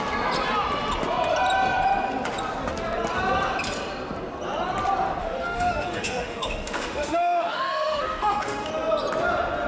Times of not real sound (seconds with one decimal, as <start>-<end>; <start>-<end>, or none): 5.2-8.7